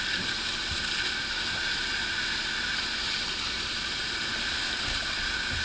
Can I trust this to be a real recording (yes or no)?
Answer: yes